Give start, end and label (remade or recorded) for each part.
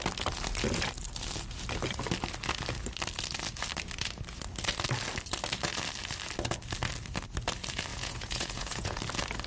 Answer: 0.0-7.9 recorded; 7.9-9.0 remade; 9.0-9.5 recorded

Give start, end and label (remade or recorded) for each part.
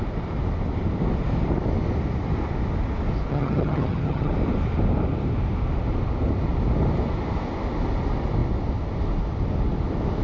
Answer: 0.0-3.3 recorded; 3.3-4.3 remade; 4.3-10.2 recorded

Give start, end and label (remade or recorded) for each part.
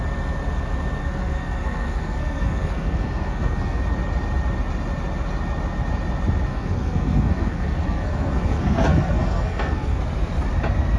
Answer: 0.0-1.0 recorded; 1.0-3.8 remade; 3.8-6.5 recorded; 6.5-10.0 remade; 10.0-11.0 recorded